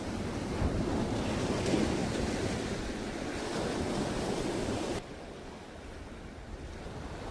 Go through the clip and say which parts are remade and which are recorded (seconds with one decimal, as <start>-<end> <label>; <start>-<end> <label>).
0.0-2.0 recorded; 2.0-2.9 remade; 2.9-7.3 recorded